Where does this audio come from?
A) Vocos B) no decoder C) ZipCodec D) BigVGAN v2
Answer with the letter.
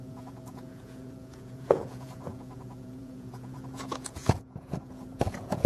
A